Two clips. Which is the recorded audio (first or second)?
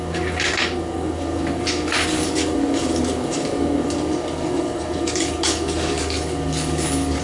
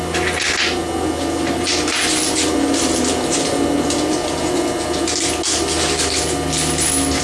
second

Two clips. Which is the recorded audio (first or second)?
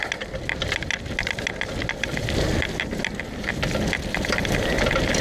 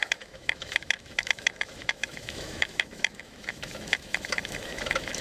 first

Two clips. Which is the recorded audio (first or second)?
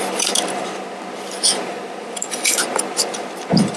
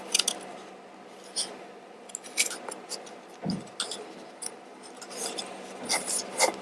second